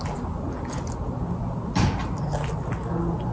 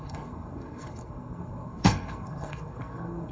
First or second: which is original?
first